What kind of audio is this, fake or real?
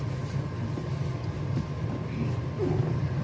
real